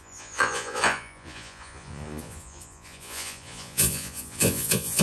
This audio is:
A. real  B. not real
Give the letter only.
B